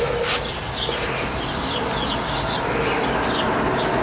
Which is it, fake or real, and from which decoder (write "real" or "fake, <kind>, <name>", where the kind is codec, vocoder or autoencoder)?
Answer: real